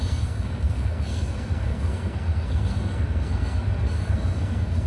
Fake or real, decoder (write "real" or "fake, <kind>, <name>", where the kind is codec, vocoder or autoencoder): fake, codec, SNAC